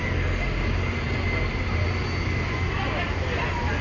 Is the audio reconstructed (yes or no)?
no